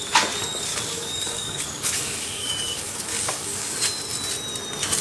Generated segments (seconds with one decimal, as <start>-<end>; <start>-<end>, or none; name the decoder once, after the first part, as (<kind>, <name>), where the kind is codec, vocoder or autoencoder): 0.7-3.7 (codec, DAC)